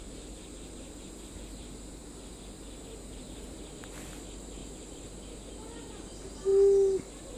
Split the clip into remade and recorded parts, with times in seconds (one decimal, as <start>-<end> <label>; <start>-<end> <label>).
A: 0.0-7.4 recorded